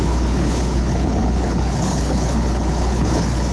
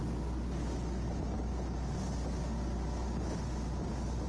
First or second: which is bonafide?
second